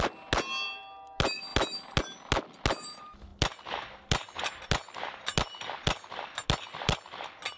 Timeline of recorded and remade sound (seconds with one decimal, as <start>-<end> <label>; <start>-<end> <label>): 0.0-7.6 recorded